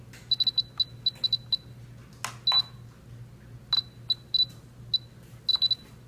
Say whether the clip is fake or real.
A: real